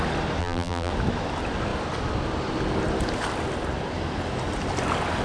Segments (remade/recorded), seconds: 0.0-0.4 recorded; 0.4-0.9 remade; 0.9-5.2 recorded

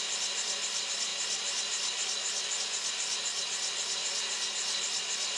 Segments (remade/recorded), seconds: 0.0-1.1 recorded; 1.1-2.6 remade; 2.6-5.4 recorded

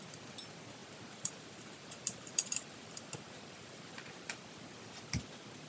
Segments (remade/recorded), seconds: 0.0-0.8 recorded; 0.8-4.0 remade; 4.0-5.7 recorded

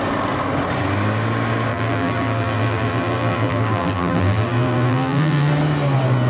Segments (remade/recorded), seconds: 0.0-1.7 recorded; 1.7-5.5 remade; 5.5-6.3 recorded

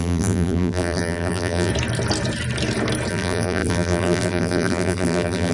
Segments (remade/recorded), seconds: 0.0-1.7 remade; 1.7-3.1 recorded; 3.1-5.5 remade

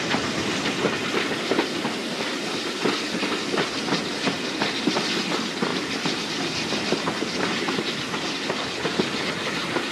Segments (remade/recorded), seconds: 0.0-2.0 recorded; 2.0-2.5 remade; 2.5-5.7 recorded; 5.7-6.4 remade; 6.4-9.9 recorded

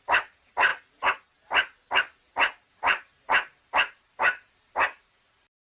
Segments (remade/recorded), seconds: 0.0-0.7 remade; 0.7-2.7 recorded; 2.7-5.8 remade

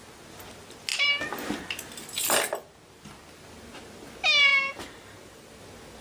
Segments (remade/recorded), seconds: 0.0-4.5 recorded; 4.5-5.6 remade; 5.6-6.0 recorded